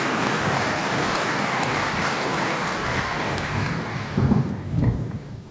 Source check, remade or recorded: remade